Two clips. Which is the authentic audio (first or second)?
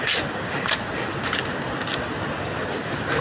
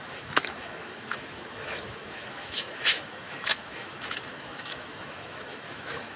first